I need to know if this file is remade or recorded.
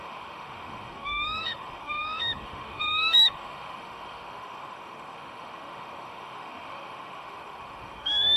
remade